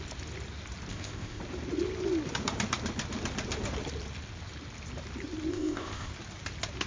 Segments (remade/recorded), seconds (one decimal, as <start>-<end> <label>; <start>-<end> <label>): 0.0-0.9 recorded; 0.9-1.4 remade; 1.4-5.5 recorded; 5.5-6.1 remade; 6.1-6.9 recorded